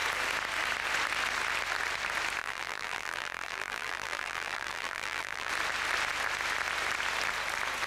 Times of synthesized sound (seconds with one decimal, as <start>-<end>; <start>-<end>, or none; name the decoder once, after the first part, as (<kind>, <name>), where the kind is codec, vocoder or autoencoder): 2.4-5.5 (vocoder, BigVGAN v2)